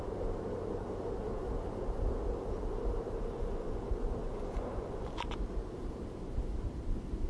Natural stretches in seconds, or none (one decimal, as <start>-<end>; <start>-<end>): 0.0-3.2; 3.8-4.2; 4.9-7.3